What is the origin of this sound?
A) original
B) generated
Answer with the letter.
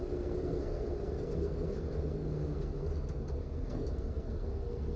B